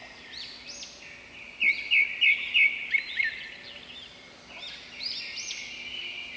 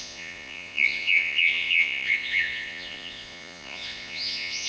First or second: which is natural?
first